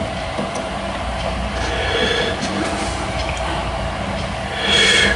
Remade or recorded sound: recorded